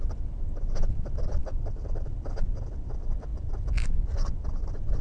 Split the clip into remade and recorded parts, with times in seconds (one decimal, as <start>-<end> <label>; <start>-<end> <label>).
0.0-5.0 recorded